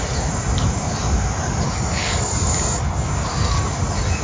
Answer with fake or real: real